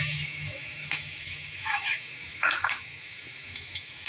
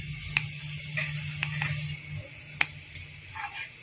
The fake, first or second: first